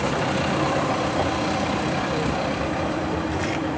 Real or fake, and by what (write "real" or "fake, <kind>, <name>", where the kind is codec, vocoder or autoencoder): fake, vocoder, BigVGAN v2